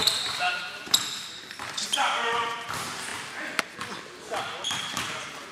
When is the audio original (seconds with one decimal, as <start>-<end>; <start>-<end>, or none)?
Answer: 3.1-5.5